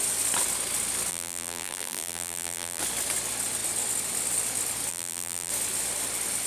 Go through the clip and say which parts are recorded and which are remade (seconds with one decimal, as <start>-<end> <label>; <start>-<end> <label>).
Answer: 0.0-1.1 recorded; 1.1-2.8 remade; 2.8-4.9 recorded; 4.9-5.5 remade; 5.5-6.5 recorded